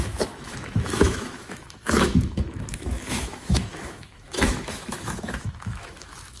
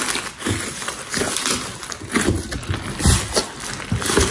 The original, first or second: second